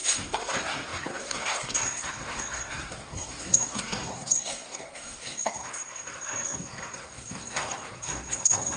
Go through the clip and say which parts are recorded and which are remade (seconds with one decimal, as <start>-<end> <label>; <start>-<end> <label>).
0.0-8.8 remade